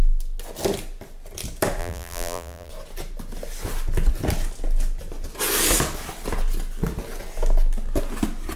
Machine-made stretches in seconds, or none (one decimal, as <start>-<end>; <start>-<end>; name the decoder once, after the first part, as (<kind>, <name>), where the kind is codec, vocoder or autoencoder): 1.8-2.7 (vocoder, BigVGAN v2)